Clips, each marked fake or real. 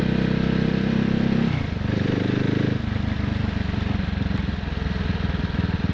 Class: real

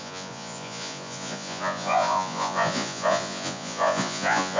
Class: fake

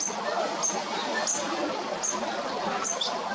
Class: real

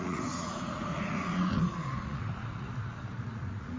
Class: fake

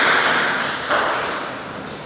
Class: real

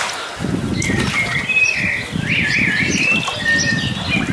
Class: real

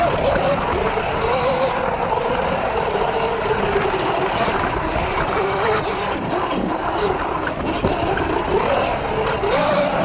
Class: real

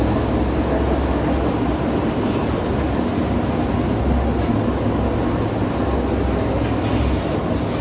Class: real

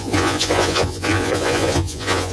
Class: fake